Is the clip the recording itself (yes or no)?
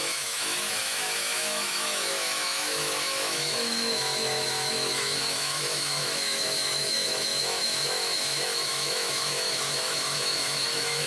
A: no